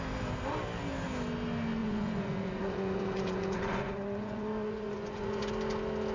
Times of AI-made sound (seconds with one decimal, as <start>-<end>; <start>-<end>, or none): 1.8-5.5

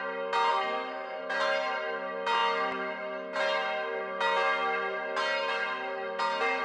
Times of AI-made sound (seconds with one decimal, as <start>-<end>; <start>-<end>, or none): 0.5-1.2

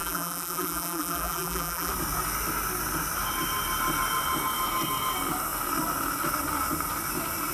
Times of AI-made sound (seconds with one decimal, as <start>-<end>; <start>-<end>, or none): 0.0-1.9